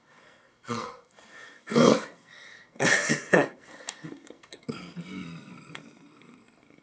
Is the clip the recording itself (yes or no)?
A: no